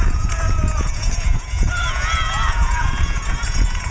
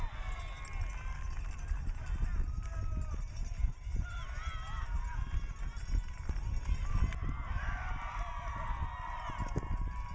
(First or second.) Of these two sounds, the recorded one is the second